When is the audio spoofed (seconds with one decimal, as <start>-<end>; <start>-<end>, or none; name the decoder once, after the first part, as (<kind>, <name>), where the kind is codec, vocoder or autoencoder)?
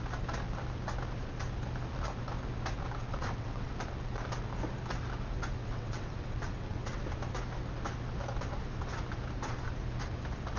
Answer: 3.1-3.7 (vocoder, WaveNeXt); 5.6-7.0